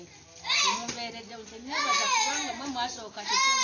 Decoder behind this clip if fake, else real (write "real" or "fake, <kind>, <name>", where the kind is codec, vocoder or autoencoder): real